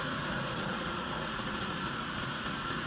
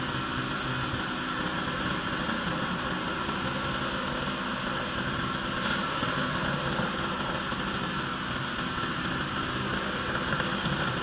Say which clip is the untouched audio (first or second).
second